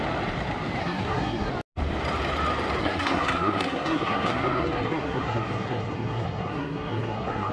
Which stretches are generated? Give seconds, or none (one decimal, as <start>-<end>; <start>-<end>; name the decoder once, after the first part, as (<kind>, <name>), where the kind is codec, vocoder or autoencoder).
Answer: 0.8-1.5 (codec, SNAC); 2.8-7.5